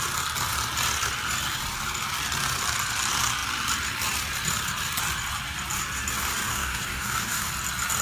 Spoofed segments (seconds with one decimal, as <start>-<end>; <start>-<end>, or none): 6.5-7.5